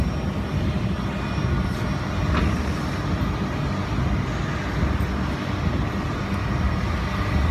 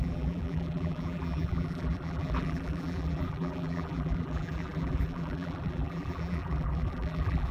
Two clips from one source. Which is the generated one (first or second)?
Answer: second